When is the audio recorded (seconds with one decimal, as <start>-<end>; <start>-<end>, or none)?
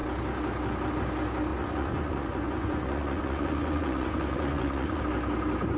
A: 0.0-1.5; 5.0-5.8